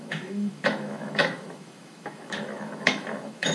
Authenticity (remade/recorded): remade